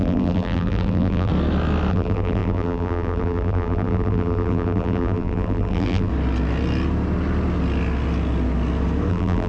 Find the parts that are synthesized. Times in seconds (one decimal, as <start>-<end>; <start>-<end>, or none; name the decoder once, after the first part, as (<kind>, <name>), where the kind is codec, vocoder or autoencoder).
0.0-1.3 (vocoder, BigVGAN v2); 1.9-6.1; 9.1-9.5